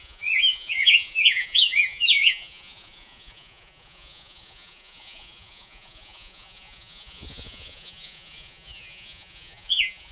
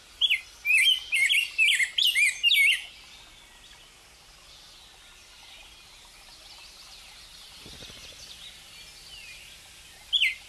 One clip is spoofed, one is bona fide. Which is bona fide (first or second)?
second